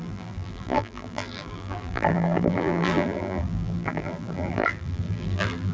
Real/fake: fake